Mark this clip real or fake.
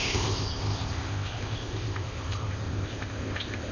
fake